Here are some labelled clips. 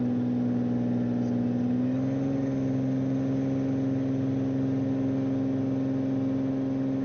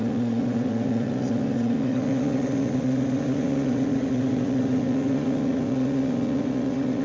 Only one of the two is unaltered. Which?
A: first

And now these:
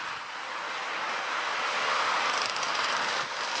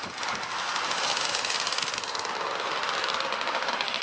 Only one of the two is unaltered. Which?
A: second